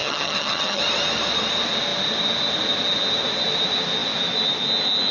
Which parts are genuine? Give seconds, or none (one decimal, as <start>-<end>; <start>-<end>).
0.8-5.1